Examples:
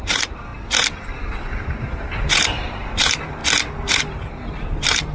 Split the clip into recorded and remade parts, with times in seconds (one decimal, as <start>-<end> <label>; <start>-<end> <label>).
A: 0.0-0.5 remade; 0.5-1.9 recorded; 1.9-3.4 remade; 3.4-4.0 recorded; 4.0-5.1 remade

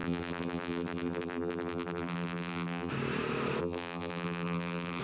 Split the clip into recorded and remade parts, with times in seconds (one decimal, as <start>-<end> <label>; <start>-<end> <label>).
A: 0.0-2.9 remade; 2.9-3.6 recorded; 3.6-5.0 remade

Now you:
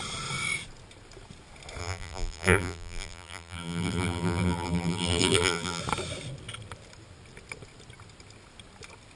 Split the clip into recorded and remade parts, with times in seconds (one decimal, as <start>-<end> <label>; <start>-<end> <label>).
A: 0.0-1.8 recorded; 1.8-5.8 remade; 5.8-9.2 recorded